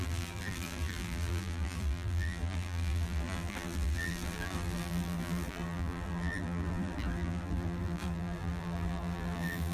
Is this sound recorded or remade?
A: remade